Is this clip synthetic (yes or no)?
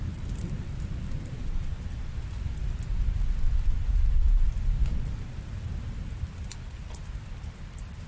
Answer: no